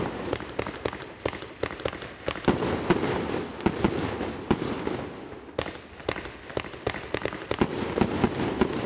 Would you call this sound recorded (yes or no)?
yes